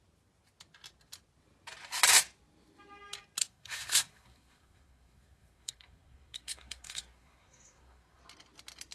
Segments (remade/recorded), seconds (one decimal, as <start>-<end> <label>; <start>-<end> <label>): 0.0-3.4 recorded; 3.4-8.2 remade; 8.2-8.9 recorded